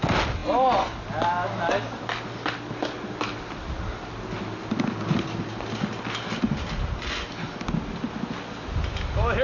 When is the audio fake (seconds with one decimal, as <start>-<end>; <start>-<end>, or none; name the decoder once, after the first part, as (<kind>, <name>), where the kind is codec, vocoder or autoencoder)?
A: none